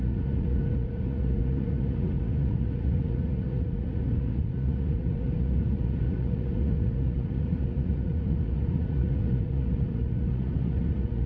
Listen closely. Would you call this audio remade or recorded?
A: remade